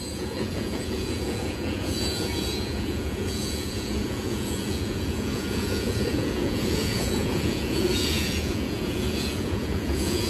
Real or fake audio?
fake